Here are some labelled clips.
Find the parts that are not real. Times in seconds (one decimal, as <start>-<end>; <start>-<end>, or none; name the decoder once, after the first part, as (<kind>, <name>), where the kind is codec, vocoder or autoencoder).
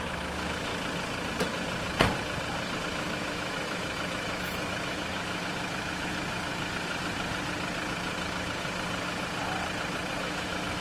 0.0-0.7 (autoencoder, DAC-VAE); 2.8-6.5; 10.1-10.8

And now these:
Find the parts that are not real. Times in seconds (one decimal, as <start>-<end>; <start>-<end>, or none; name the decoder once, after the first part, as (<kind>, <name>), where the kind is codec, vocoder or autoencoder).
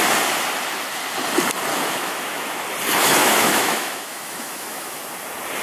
1.7-2.6 (autoencoder, DAC-VAE); 3.2-5.0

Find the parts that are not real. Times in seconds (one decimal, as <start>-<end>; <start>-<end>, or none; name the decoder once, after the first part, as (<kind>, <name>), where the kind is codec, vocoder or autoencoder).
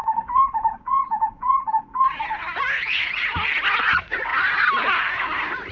0.0-3.3 (vocoder, Vocos); 3.8-4.3; 5.2-5.7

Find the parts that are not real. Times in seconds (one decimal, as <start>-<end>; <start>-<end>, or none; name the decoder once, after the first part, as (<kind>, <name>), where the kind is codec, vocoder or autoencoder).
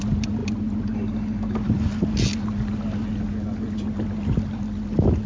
none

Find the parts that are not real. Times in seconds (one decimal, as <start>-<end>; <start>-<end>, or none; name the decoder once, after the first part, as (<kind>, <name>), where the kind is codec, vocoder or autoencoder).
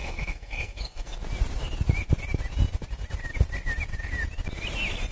0.0-1.2 (codec, SNAC)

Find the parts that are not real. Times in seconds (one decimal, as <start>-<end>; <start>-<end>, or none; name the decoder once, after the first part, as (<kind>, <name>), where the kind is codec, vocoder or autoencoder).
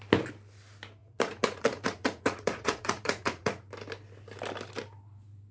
1.0-3.7 (vocoder, Vocos)